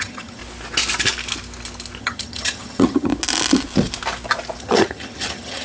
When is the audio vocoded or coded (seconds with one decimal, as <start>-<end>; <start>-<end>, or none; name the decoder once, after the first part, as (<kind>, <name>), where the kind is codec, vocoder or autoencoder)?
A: 0.0-0.4 (vocoder, HiFi-GAN); 2.0-3.1; 4.6-5.6